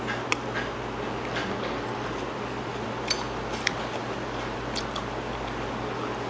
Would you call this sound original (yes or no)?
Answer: yes